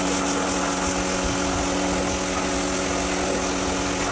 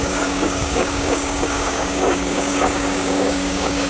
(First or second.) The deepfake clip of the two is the second